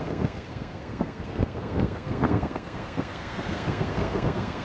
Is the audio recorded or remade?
remade